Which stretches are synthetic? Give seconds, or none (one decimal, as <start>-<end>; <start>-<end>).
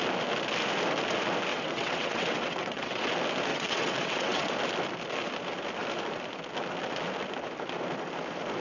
1.5-3.1; 3.5-4.5